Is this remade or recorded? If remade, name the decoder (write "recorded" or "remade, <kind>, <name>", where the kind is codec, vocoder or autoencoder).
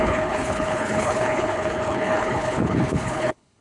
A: remade, codec, HILCodec